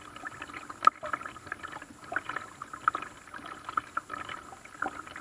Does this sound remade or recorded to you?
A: recorded